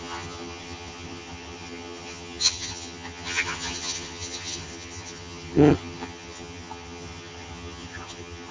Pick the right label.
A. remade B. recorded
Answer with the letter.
A